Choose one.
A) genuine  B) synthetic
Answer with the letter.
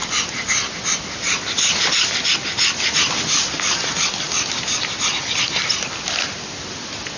A